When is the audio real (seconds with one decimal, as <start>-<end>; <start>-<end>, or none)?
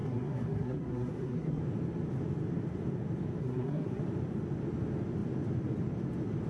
1.6-3.4; 4.0-6.5